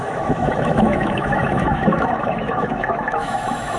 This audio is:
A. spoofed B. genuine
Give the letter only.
A